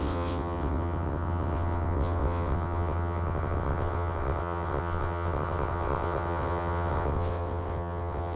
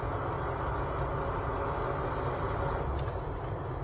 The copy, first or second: first